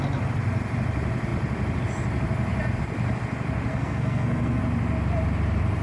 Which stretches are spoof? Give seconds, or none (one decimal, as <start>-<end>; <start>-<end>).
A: 3.7-4.6